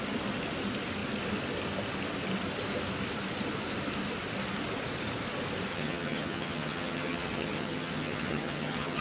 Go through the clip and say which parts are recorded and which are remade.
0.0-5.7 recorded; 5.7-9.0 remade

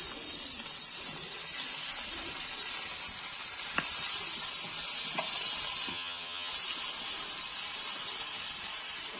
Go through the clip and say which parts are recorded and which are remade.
0.0-5.9 recorded; 5.9-6.5 remade; 6.5-9.2 recorded

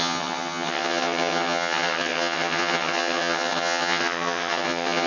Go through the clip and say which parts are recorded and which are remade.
0.0-5.1 remade

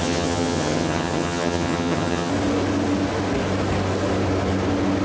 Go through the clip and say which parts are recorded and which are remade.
0.0-2.3 remade; 2.3-5.0 recorded

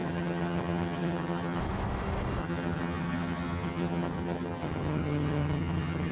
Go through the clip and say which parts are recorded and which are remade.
0.0-1.6 remade; 1.6-2.4 recorded; 2.4-6.1 remade